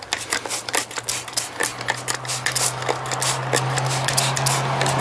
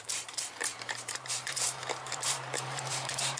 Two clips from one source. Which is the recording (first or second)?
first